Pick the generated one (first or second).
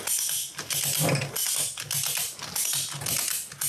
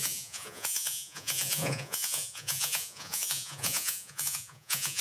second